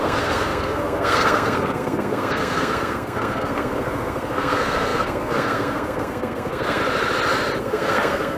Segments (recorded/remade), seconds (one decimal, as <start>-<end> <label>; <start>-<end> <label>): 0.0-6.8 remade; 6.8-7.6 recorded; 7.6-8.4 remade